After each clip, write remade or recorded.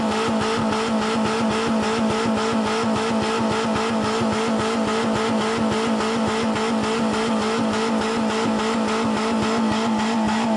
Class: recorded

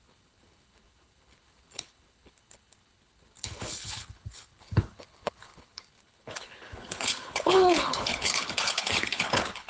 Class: remade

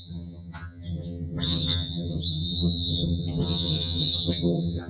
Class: remade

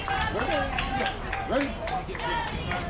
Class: recorded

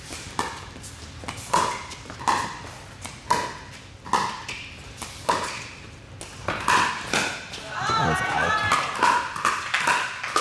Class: recorded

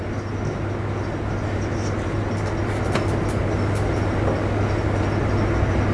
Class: recorded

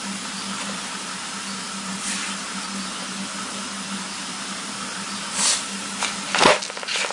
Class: recorded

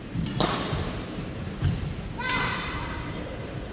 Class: remade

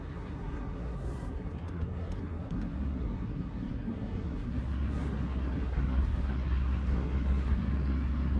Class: remade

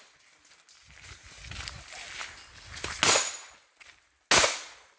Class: recorded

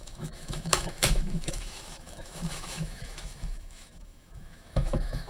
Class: remade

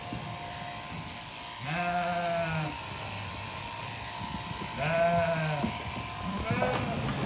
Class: recorded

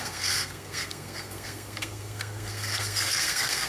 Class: remade